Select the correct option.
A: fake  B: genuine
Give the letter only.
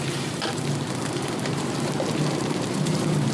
A